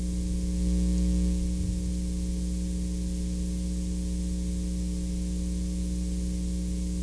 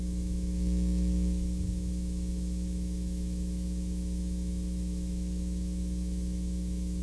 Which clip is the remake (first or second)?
second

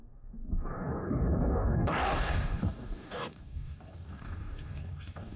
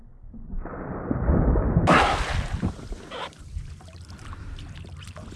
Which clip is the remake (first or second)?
first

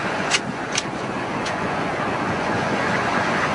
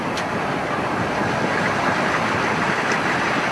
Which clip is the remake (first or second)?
first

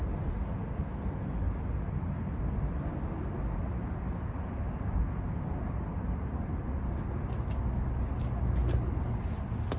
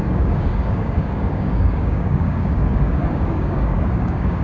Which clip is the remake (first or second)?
second